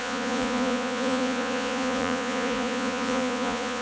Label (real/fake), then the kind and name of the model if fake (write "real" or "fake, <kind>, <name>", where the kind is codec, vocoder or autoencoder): fake, vocoder, Vocos